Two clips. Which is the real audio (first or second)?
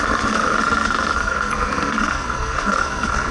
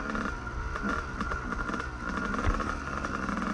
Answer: second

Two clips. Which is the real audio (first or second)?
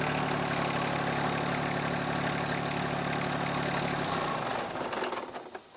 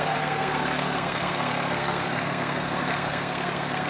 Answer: first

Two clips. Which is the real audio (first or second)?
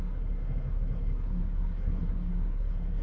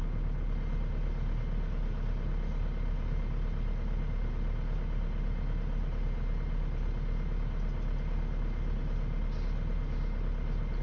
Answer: second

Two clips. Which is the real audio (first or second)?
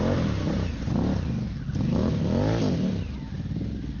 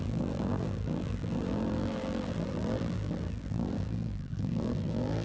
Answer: first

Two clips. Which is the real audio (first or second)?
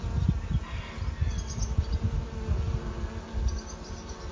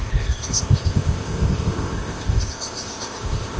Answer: first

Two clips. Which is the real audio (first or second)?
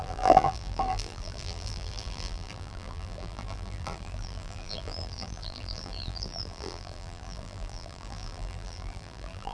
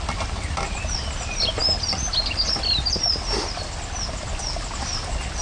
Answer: second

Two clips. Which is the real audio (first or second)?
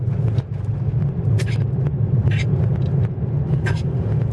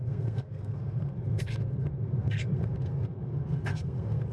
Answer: first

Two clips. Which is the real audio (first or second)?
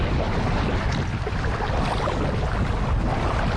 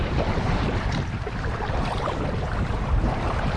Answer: first